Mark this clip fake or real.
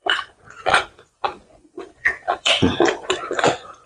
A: fake